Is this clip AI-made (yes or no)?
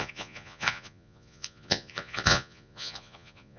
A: yes